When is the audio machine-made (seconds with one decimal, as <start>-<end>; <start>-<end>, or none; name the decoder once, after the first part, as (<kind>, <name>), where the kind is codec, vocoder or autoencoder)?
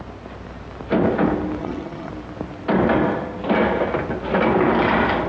1.6-2.1 (vocoder, HiFi-GAN)